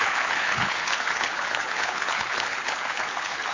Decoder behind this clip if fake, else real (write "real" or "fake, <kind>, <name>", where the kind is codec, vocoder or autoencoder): fake, codec, HILCodec